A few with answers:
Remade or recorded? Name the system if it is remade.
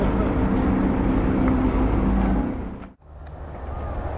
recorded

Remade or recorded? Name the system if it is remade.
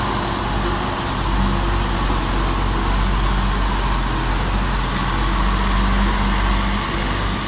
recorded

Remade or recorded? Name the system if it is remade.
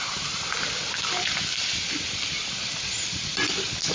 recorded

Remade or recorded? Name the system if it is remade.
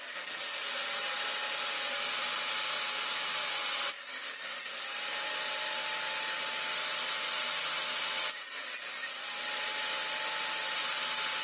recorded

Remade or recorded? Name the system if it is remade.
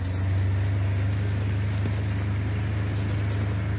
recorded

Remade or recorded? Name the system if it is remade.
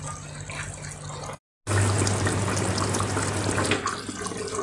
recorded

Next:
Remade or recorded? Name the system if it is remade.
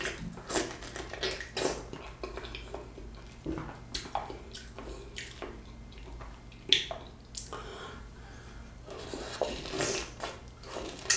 recorded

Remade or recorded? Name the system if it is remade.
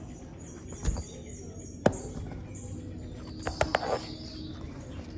recorded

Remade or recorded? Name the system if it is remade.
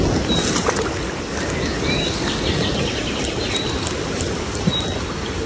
recorded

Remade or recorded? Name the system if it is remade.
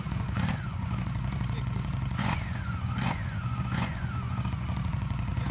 remade, vocoder, Vocos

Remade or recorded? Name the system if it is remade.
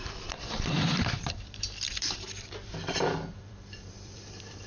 remade, vocoder, BigVGAN v2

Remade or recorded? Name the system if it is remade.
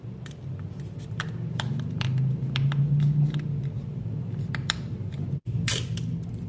remade, vocoder, BigVGAN v2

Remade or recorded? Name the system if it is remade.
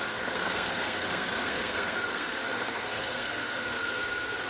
remade, codec, SNAC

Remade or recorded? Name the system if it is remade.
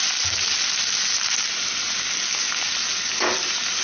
recorded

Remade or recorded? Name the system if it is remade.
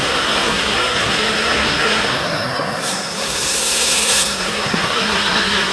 remade, codec, SNAC